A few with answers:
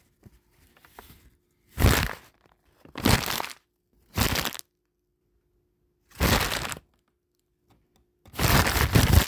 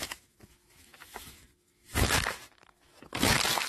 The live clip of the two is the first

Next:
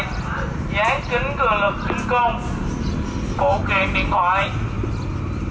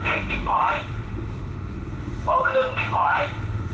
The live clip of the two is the first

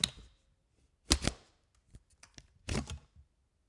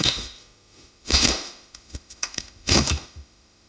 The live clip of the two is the first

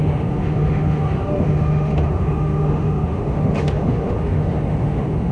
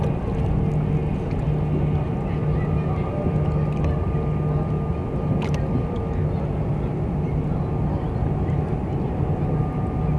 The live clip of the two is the second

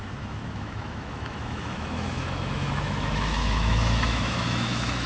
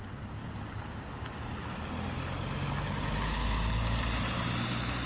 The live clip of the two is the second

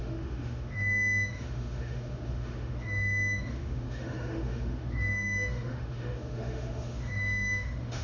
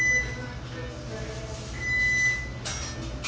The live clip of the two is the second